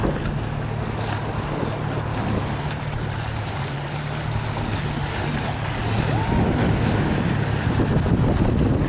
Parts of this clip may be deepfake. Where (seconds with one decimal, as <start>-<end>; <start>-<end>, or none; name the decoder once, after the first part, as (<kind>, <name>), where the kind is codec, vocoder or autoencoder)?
none